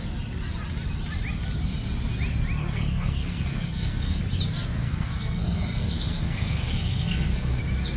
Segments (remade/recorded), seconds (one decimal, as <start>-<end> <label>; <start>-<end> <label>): 0.0-2.6 recorded; 2.6-4.2 remade; 4.2-4.8 recorded; 4.8-7.6 remade; 7.6-8.0 recorded